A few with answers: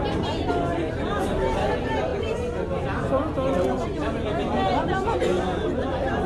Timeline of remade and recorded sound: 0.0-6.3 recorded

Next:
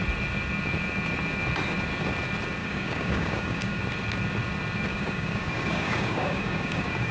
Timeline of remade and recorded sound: 0.0-2.6 recorded; 2.6-3.8 remade; 3.8-4.9 recorded; 4.9-7.1 remade

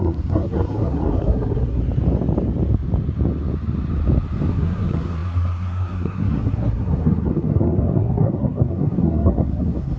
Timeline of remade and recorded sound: 0.0-1.8 remade; 1.8-4.5 recorded; 4.5-10.0 remade

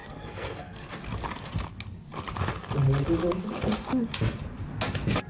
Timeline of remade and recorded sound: 0.0-0.9 remade; 0.9-5.3 recorded

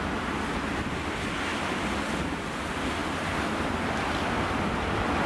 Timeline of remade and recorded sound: 0.0-5.3 recorded

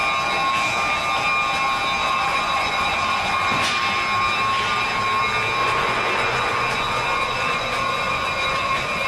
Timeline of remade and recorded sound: 0.0-2.0 recorded; 2.0-3.7 remade; 3.7-5.6 recorded; 5.6-9.1 remade

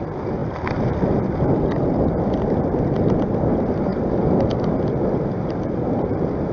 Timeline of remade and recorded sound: 0.0-0.4 recorded; 0.4-3.4 remade; 3.4-3.9 recorded; 3.9-4.6 remade; 4.6-6.5 recorded

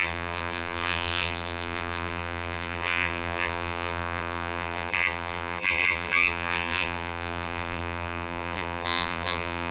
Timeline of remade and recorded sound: 0.0-9.7 remade